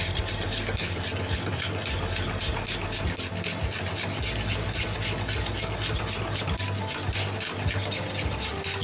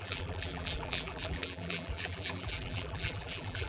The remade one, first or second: second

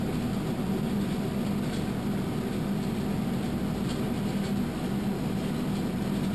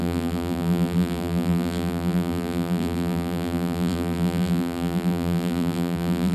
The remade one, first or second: second